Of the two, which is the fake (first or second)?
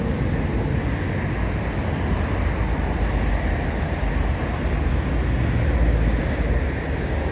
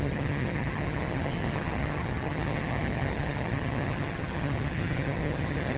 second